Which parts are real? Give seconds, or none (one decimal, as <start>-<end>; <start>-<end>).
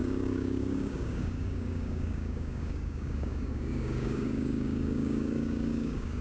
none